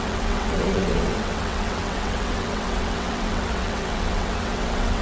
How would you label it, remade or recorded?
remade